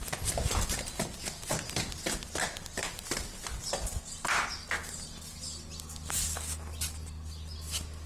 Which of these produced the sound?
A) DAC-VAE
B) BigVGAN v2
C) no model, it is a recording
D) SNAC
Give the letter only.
C